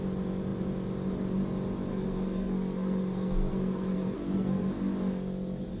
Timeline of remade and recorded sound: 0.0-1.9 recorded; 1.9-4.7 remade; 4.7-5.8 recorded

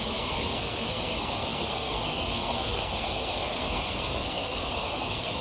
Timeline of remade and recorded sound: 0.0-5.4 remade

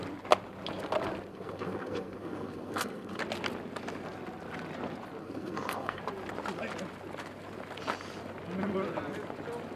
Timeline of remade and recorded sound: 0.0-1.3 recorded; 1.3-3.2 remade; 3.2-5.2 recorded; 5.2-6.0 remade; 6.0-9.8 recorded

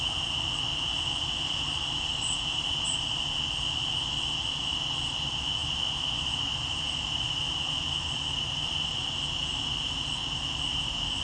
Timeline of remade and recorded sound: 0.0-11.2 recorded

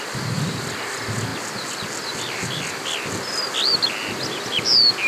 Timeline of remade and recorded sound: 0.0-5.1 recorded

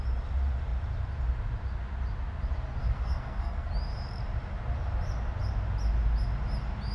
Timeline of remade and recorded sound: 0.0-2.8 recorded; 2.8-3.7 remade; 3.7-6.9 recorded